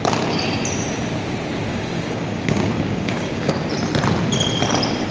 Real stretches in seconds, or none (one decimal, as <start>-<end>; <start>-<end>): 0.0-1.7; 3.5-5.1